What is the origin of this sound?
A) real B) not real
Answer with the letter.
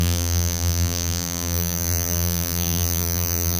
B